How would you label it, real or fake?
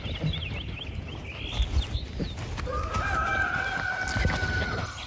real